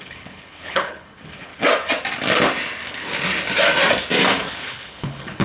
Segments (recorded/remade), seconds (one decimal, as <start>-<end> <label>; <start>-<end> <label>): 0.0-1.5 remade; 1.5-4.7 recorded; 4.7-5.4 remade